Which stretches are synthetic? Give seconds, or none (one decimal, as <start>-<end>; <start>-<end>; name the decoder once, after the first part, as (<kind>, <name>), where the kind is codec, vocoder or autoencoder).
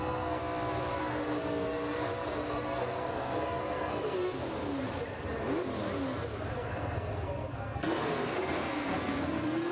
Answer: 0.0-0.4 (codec, SNAC); 1.0-4.4; 6.5-9.7